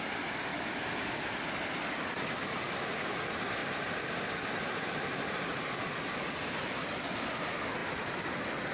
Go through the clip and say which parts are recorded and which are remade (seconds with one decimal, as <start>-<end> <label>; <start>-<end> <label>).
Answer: 0.0-0.5 recorded; 0.5-1.4 remade; 1.4-7.8 recorded; 7.8-8.7 remade